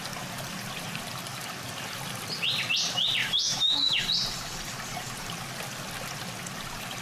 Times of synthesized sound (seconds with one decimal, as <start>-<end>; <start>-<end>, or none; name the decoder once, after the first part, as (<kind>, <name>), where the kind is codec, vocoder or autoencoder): 3.2-4.0 (autoencoder, DAC-VAE)